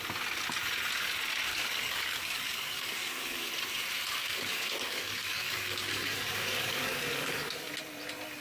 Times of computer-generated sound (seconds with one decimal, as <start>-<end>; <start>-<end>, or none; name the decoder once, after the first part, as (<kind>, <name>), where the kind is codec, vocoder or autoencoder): 1.5-3.5 (codec, DAC); 4.2-7.7